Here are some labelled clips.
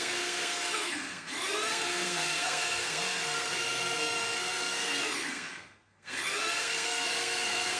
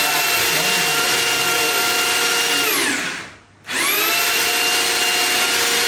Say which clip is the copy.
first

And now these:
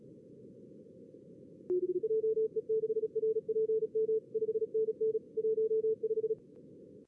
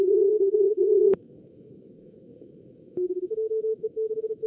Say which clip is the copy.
second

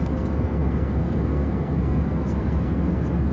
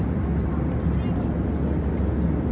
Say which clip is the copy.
first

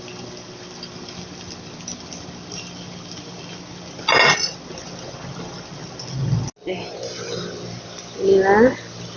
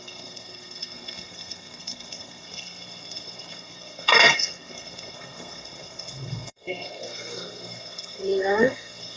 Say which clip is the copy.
second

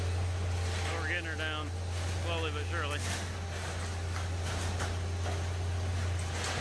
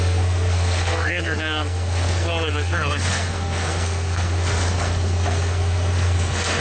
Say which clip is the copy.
second